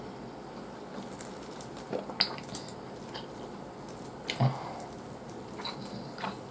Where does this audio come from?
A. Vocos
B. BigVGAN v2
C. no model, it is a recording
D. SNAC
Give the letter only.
C